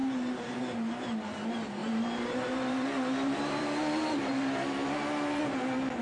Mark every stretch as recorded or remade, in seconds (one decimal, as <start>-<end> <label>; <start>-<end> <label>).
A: 0.0-0.6 remade; 0.6-1.8 recorded; 1.8-5.4 remade; 5.4-6.0 recorded